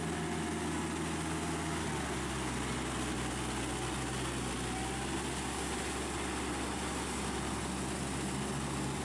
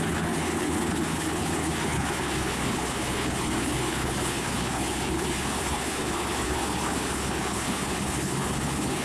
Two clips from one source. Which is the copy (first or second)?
second